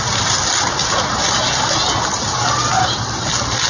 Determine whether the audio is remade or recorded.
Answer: recorded